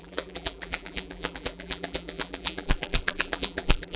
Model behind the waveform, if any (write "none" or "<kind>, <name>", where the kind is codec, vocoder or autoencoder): vocoder, BigVGAN v2